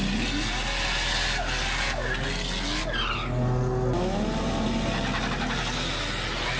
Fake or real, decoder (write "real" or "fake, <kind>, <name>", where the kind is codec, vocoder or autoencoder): real